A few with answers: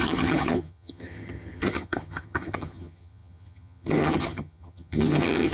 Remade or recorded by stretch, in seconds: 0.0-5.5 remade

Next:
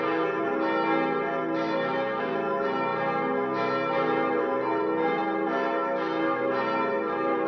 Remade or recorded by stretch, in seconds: 0.0-7.5 recorded

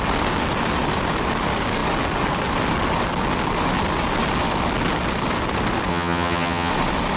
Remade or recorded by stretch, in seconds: 0.0-5.9 recorded; 5.9-6.7 remade; 6.7-7.2 recorded

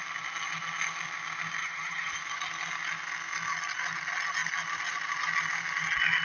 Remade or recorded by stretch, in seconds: 0.0-1.6 recorded; 1.6-2.1 remade; 2.1-6.2 recorded

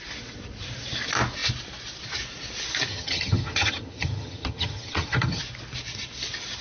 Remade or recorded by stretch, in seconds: 0.0-2.9 recorded; 2.9-5.4 remade; 5.4-6.6 recorded

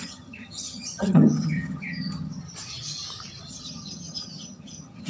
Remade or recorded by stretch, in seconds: 0.0-2.4 remade; 2.4-3.5 recorded; 3.5-5.1 remade